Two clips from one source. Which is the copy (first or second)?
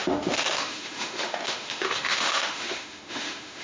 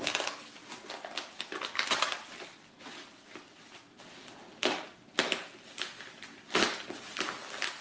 first